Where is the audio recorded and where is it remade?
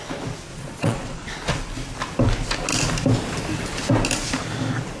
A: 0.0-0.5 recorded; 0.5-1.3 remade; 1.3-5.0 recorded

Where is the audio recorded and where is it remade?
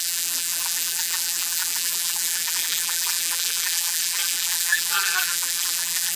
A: 0.0-6.2 remade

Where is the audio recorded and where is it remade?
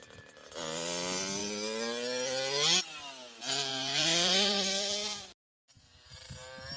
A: 0.0-3.7 recorded; 3.7-6.8 remade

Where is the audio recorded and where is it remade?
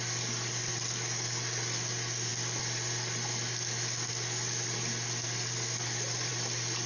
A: 0.0-6.9 recorded